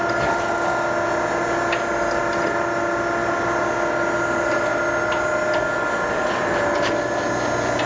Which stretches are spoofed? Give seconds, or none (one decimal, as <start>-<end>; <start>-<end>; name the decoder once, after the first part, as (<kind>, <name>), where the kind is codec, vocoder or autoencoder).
none